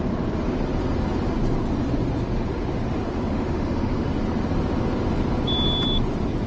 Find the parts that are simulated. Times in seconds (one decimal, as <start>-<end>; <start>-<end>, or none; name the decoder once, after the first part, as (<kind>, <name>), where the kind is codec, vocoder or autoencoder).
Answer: 3.0-4.1 (autoencoder, DAC-VAE)